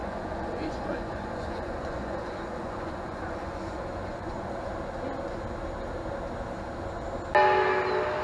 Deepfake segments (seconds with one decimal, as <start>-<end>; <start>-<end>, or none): 0.0-4.5